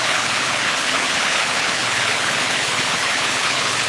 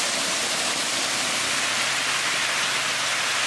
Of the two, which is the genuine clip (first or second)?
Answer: second